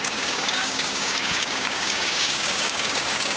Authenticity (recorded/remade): remade